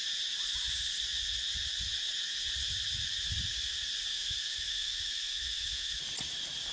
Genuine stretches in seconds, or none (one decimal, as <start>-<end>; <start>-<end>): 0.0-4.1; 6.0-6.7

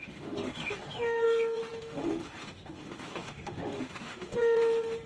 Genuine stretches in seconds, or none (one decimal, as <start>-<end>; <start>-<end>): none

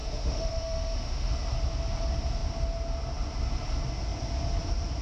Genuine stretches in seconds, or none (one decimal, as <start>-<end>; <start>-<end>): 1.3-5.0

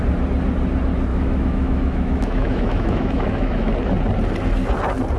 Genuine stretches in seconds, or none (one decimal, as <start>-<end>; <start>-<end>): 0.0-1.1; 3.7-5.2